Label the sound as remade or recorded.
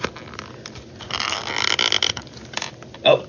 recorded